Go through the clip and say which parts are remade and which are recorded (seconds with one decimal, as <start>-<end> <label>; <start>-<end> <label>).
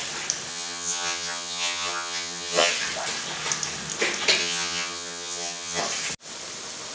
0.0-0.5 recorded; 0.5-2.7 remade; 2.7-4.4 recorded; 4.4-5.8 remade; 5.8-6.9 recorded